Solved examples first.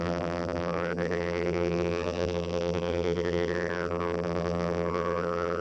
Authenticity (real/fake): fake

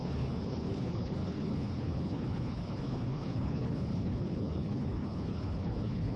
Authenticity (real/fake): fake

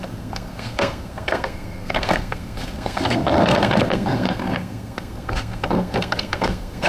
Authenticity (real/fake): fake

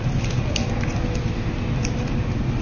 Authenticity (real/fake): real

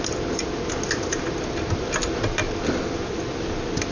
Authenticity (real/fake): real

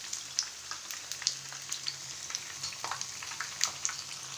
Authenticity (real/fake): real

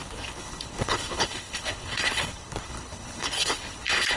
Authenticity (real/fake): fake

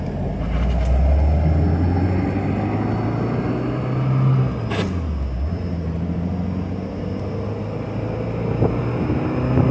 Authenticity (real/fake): real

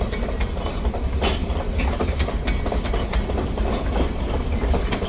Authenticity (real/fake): real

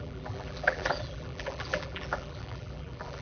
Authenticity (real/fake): fake